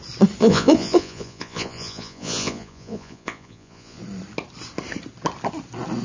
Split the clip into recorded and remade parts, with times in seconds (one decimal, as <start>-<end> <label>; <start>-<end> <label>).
0.0-0.4 recorded; 0.4-4.0 remade; 4.0-6.0 recorded